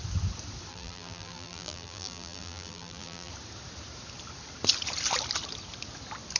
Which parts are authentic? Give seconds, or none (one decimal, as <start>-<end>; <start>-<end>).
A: 0.0-0.7; 3.3-6.4